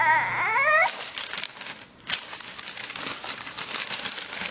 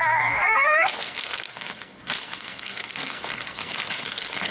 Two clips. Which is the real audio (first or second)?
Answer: first